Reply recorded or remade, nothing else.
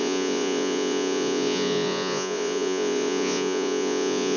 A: remade